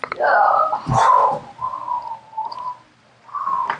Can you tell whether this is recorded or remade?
recorded